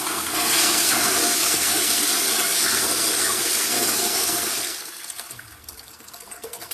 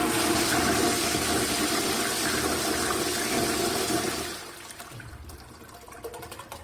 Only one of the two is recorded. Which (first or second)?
second